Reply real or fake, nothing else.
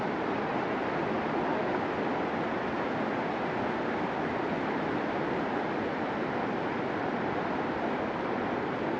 real